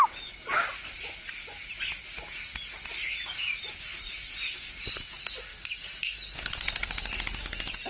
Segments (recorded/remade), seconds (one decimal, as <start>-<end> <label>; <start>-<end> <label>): 0.0-7.9 recorded